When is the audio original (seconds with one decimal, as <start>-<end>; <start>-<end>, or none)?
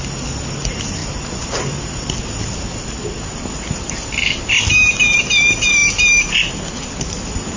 0.0-7.6